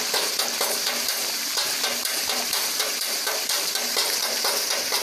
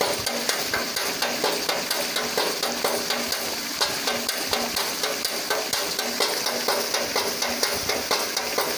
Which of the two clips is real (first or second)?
second